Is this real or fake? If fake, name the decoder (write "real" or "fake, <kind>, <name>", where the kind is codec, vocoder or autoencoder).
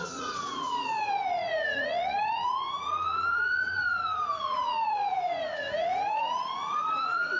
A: fake, vocoder, Vocos